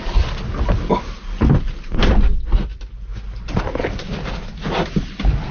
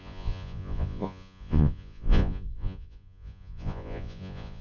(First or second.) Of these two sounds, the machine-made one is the second